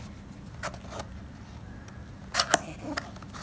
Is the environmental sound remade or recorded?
recorded